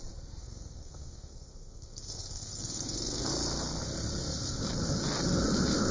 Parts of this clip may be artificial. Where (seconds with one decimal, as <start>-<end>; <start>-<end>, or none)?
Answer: 0.4-3.3